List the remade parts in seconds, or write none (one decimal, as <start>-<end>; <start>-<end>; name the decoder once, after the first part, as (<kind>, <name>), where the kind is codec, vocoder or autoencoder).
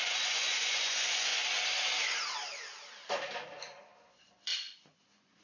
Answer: 0.0-1.3 (vocoder, Vocos); 3.8-5.4